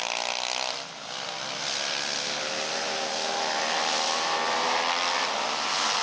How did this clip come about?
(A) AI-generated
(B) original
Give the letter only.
B